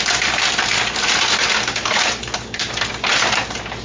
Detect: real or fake fake